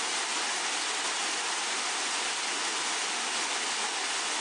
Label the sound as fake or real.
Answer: real